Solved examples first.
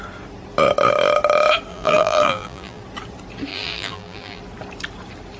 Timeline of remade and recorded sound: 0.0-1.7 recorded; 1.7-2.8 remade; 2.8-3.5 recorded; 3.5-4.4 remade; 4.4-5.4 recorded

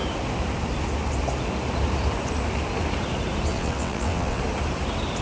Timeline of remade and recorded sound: 0.0-3.5 recorded; 3.5-4.4 remade; 4.4-5.2 recorded

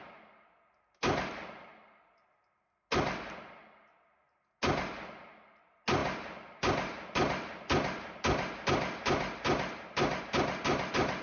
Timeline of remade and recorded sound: 0.0-11.2 recorded

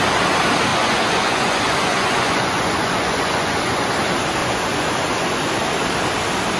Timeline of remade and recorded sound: 0.0-0.7 recorded; 0.7-3.9 remade; 3.9-4.4 recorded; 4.4-5.4 remade; 5.4-6.6 recorded

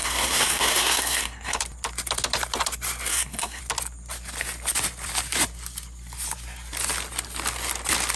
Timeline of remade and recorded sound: 0.0-1.6 remade; 1.6-3.1 recorded; 3.1-3.6 remade; 3.6-8.2 recorded